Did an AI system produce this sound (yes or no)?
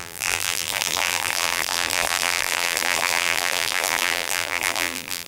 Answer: yes